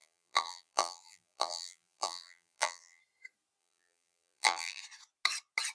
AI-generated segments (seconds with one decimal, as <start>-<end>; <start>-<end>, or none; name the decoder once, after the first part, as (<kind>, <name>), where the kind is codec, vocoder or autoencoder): 0.0-3.0 (vocoder, BigVGAN v2); 3.6-4.8